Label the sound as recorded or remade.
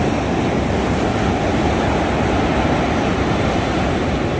recorded